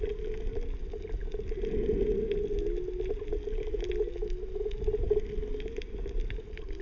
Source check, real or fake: real